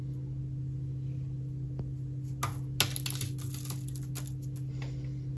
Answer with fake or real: real